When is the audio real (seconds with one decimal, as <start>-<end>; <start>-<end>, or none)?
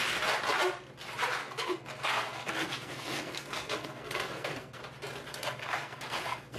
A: 0.0-1.4; 4.8-5.3